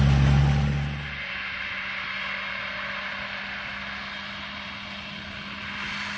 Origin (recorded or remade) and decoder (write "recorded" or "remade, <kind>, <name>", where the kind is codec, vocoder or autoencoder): recorded